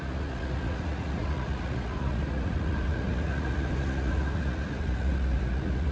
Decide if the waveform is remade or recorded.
remade